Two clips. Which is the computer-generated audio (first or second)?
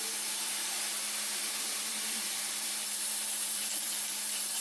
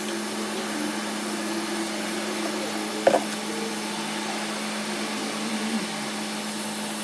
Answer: first